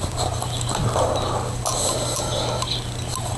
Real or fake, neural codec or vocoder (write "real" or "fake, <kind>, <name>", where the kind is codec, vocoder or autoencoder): real